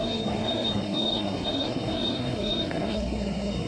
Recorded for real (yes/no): no